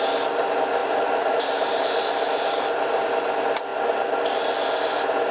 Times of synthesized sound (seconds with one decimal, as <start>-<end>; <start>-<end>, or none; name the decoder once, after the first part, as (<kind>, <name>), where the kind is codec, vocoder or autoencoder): 0.8-3.3 (vocoder, BigVGAN v2)